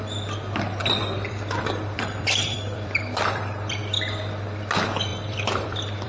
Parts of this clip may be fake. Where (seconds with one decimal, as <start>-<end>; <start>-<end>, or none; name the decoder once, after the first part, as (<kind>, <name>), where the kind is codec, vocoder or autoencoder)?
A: 0.8-3.8 (vocoder, BigVGAN v2); 5.1-6.1